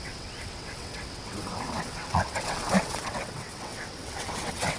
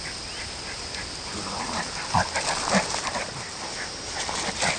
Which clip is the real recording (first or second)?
second